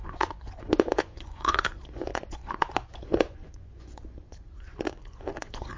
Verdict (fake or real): fake